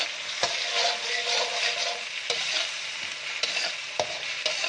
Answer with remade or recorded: recorded